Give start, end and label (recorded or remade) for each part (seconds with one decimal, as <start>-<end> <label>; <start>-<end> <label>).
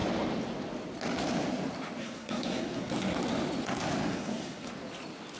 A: 0.0-2.0 recorded; 2.0-2.9 remade; 2.9-4.1 recorded; 4.1-4.7 remade; 4.7-5.4 recorded